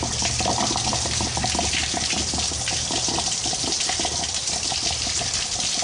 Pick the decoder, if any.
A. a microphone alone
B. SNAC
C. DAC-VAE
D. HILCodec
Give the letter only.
A